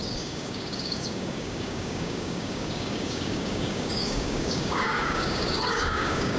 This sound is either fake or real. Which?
fake